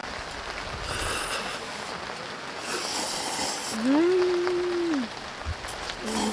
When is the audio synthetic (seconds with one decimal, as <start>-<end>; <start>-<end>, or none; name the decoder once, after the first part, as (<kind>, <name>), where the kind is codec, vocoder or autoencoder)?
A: none